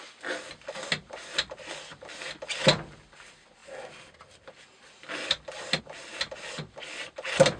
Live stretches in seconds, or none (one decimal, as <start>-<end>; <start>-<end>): 0.0-7.6